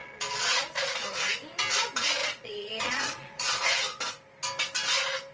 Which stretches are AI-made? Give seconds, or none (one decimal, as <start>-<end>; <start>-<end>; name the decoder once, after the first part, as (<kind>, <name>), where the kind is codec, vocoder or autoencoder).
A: 0.0-1.0 (vocoder, Vocos); 2.2-3.6